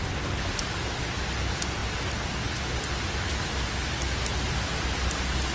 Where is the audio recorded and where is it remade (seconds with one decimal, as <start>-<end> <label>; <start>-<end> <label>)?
0.0-5.5 recorded

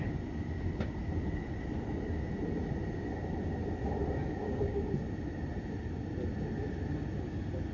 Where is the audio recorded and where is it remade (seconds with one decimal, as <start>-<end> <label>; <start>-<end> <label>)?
0.0-4.4 recorded; 4.4-4.9 remade; 4.9-7.7 recorded

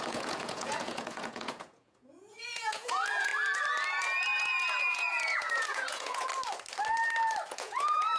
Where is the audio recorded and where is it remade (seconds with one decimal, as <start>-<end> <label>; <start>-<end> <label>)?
0.0-3.3 remade; 3.3-4.4 recorded; 4.4-6.3 remade; 6.3-7.5 recorded; 7.5-8.2 remade

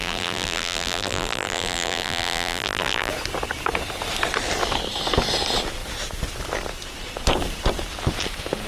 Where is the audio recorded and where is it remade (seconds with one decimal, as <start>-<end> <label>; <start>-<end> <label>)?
0.0-3.1 remade; 3.1-8.7 recorded